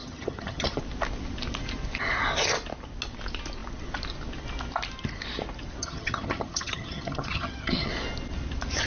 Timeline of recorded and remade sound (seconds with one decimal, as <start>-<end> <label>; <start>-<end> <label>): 0.0-0.8 remade; 0.8-5.8 recorded; 5.8-7.9 remade; 7.9-8.9 recorded